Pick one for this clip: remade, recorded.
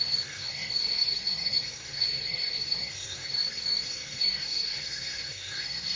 remade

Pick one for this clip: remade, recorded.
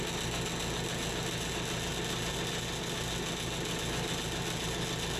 recorded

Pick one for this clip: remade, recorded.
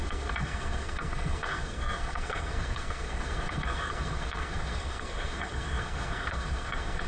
remade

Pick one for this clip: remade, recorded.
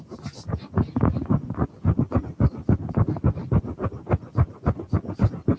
recorded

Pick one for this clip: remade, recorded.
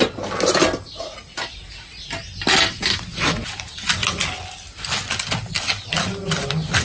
recorded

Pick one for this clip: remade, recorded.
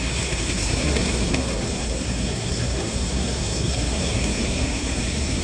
remade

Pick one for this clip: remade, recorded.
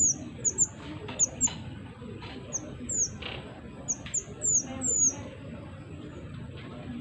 recorded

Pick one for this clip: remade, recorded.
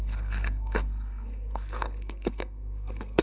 remade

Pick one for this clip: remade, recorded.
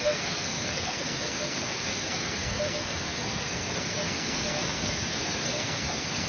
remade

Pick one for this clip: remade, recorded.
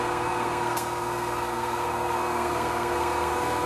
remade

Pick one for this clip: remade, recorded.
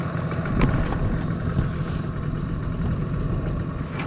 recorded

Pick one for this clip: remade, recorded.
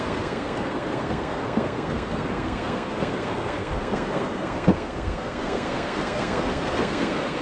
remade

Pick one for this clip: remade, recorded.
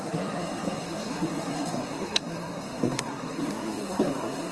remade